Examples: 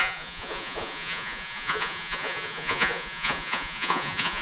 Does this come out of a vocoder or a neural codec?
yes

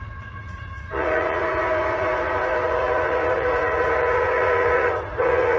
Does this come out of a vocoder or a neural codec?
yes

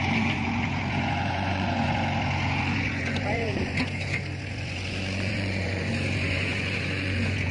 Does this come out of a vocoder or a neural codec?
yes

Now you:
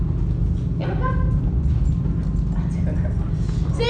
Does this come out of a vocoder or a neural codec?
no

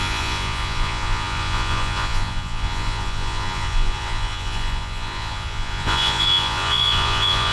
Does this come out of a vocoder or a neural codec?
yes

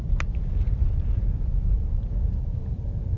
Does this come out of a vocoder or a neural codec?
no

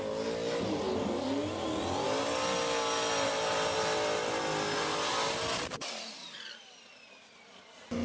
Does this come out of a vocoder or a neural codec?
no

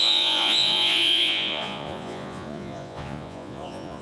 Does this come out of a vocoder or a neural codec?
yes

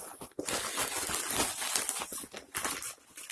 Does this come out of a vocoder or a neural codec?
no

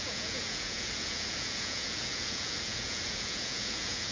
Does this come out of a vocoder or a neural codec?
yes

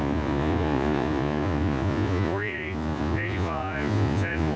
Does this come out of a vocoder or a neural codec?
yes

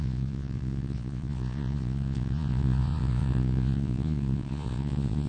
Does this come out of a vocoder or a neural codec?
yes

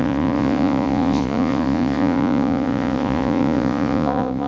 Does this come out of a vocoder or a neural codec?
yes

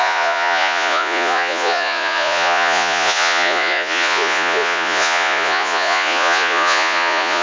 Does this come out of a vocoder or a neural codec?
yes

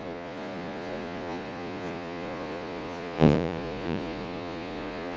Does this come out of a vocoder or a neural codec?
yes